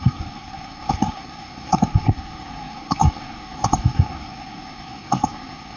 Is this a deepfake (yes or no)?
yes